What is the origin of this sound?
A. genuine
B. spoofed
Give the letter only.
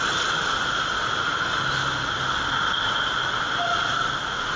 A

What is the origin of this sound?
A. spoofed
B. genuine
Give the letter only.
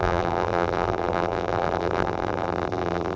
A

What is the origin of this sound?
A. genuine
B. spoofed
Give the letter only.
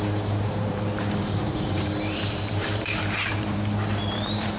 B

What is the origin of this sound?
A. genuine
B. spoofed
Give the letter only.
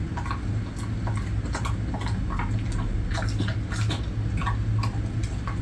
A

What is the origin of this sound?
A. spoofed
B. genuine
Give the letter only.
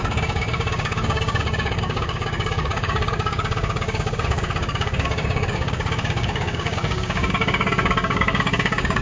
A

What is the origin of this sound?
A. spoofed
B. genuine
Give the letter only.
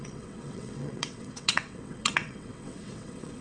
A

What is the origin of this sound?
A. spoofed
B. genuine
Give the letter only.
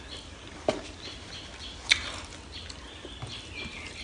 B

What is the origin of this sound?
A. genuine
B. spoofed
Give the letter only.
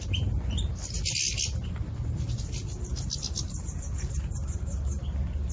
A